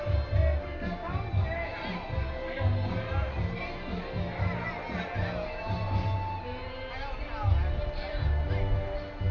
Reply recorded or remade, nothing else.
recorded